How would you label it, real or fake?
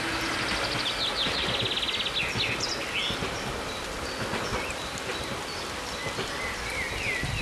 real